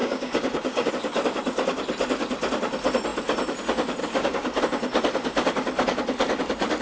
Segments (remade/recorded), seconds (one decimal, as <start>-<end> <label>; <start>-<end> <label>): 0.0-0.9 remade; 0.9-4.0 recorded; 4.0-4.6 remade; 4.6-6.8 recorded